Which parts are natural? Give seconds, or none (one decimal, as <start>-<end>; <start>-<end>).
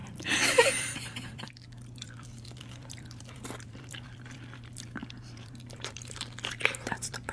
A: none